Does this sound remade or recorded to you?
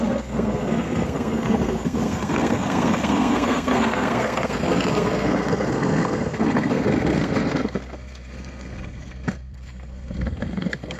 remade